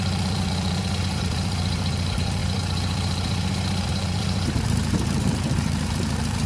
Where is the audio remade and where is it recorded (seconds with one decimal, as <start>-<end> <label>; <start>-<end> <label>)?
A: 0.0-6.5 remade